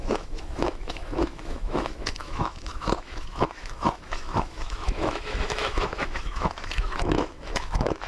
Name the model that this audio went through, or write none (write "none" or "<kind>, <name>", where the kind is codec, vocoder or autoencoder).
autoencoder, DAC-VAE